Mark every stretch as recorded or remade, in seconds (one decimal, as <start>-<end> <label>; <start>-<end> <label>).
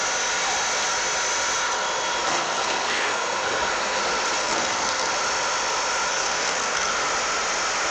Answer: 0.0-2.2 recorded; 2.2-4.0 remade; 4.0-4.4 recorded; 4.4-5.1 remade; 5.1-6.1 recorded; 6.1-6.9 remade; 6.9-7.9 recorded